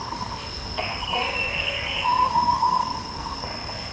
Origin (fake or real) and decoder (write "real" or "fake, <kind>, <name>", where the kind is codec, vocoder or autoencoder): fake, codec, SNAC